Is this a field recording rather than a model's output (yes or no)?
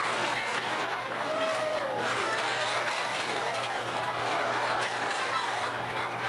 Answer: no